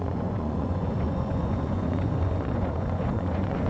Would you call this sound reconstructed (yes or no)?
yes